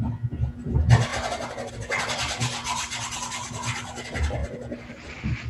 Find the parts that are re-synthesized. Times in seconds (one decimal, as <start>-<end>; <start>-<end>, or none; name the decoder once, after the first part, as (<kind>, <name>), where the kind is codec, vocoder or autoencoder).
4.4-4.9 (vocoder, BigVGAN v2)